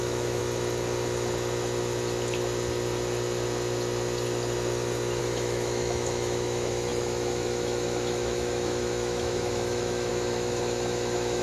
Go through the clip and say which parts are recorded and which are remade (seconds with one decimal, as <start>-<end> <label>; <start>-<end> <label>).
0.0-0.4 remade; 0.4-5.2 recorded; 5.2-11.4 remade